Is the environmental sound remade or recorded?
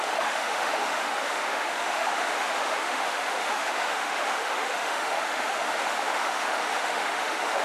remade